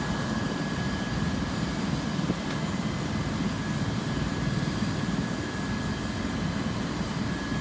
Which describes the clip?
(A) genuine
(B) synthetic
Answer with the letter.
A